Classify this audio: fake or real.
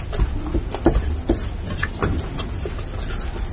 real